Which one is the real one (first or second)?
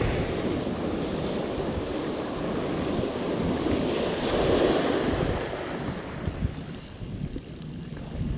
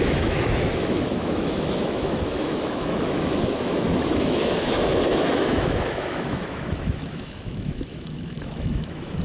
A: first